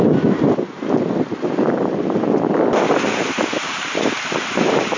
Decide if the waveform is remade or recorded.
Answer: recorded